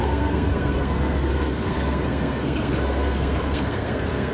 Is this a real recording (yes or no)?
no